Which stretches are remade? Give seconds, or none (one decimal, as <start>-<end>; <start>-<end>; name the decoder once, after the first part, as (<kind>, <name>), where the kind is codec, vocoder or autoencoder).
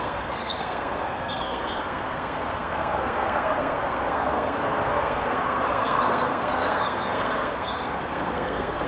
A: 0.0-8.9 (codec, SNAC)